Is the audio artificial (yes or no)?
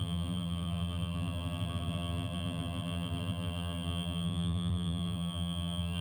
yes